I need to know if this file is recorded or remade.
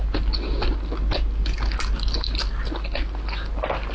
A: recorded